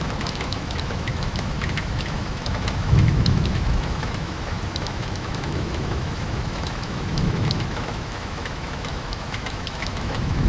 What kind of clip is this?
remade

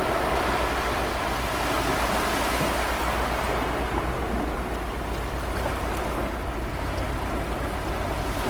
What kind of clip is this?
recorded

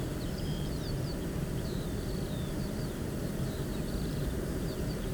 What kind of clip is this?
remade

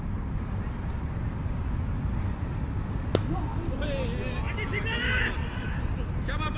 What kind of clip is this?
recorded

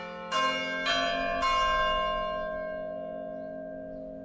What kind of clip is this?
recorded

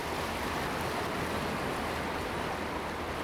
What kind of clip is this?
recorded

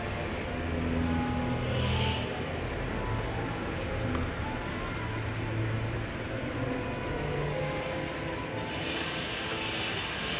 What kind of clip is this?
recorded